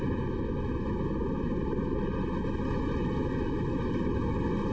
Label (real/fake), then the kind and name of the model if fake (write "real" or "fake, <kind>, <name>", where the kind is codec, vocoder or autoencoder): fake, autoencoder, DAC-VAE